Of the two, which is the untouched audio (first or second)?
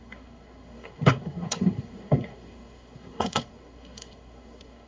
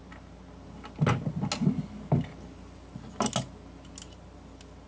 second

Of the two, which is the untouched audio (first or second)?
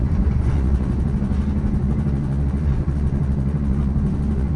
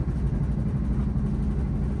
second